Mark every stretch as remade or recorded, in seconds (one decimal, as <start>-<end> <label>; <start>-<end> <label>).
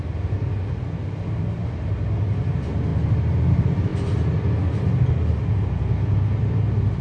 0.0-7.0 recorded